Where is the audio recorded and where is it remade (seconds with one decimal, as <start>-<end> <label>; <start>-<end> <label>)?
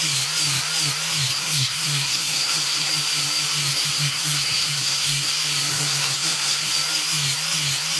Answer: 0.0-1.3 recorded; 1.3-2.9 remade; 2.9-3.7 recorded; 3.7-5.3 remade; 5.3-5.7 recorded; 5.7-6.7 remade; 6.7-8.0 recorded